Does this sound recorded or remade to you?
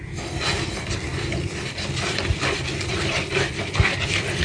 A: recorded